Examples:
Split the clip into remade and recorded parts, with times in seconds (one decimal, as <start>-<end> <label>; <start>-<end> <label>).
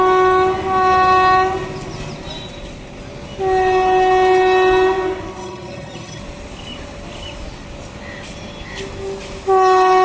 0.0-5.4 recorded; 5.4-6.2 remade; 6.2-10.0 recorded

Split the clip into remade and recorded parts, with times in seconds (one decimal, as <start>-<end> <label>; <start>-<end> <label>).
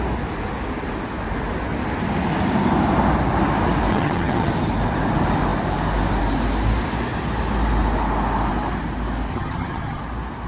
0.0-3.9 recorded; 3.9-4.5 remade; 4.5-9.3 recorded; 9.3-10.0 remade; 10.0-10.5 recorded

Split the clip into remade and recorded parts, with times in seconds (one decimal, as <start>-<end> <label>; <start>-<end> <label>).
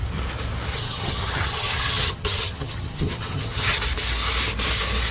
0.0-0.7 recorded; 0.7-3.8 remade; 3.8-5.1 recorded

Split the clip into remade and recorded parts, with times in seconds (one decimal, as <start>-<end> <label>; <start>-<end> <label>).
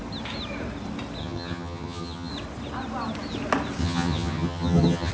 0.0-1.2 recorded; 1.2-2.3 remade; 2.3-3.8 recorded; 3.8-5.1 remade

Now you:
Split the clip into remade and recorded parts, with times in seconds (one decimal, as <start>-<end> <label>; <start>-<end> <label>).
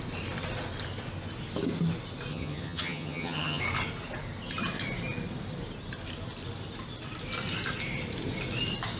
0.0-2.3 recorded; 2.3-3.6 remade; 3.6-9.0 recorded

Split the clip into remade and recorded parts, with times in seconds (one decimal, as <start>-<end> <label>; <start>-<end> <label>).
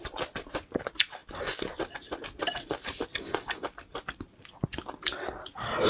0.0-5.9 recorded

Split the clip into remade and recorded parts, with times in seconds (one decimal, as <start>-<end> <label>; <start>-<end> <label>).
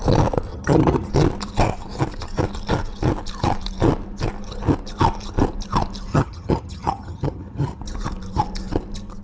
0.0-0.5 recorded; 0.5-1.1 remade; 1.1-6.1 recorded; 6.1-7.8 remade; 7.8-9.2 recorded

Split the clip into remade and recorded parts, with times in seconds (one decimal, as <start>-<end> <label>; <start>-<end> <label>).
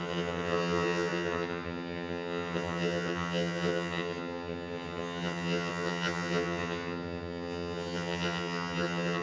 0.0-9.2 remade